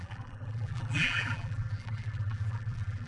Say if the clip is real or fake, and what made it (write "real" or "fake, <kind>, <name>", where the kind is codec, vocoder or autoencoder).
fake, vocoder, BigVGAN v2